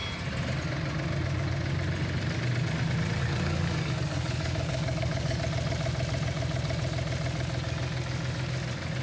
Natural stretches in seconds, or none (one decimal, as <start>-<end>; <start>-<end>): 0.0-3.2; 5.4-9.0